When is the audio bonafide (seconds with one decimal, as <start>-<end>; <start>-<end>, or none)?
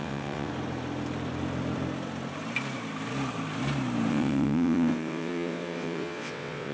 0.5-4.1